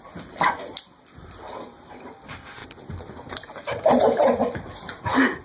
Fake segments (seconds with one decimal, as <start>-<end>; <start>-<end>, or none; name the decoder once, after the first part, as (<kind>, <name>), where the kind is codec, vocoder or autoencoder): 2.6-5.0 (vocoder, BigVGAN v2)